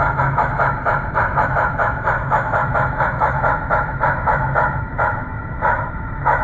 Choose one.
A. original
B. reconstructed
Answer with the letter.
B